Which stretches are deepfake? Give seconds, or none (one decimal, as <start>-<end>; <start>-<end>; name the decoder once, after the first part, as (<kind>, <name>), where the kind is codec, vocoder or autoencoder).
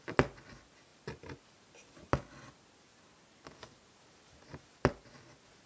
none